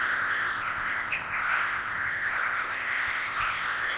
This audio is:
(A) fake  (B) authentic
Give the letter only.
A